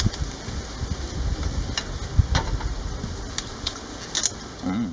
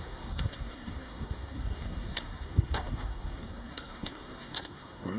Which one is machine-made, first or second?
second